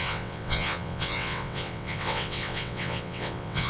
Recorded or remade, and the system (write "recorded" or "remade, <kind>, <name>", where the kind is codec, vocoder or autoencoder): remade, vocoder, WaveNeXt